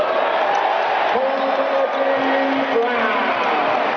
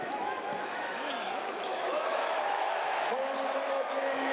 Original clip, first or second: first